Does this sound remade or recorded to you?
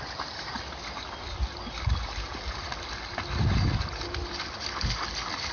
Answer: recorded